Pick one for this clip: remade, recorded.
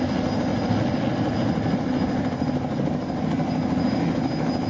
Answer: recorded